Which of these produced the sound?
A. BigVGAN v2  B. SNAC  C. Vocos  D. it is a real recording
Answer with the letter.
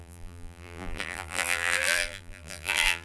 A